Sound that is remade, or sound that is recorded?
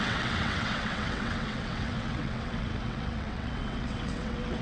remade